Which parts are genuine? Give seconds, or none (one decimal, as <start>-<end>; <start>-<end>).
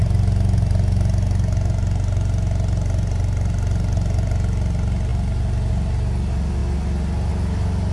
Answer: 0.0-7.9